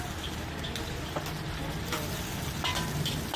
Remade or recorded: recorded